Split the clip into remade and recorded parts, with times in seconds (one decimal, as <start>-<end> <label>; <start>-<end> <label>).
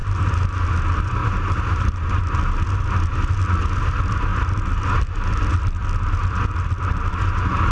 0.0-0.7 remade; 0.7-1.2 recorded; 1.2-2.2 remade; 2.2-7.7 recorded